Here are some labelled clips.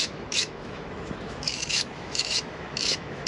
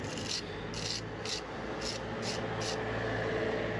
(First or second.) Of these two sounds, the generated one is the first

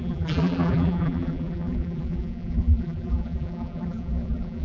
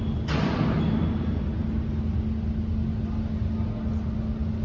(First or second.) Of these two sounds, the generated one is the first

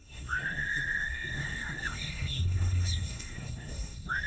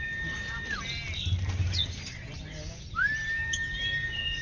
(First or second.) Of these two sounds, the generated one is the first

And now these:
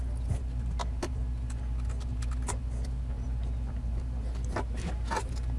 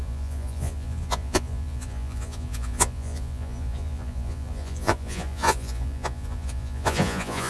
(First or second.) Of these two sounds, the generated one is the second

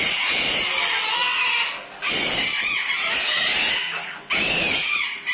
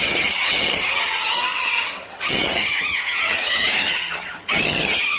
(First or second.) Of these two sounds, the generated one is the second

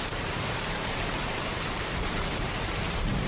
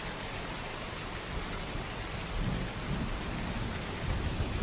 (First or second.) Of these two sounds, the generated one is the first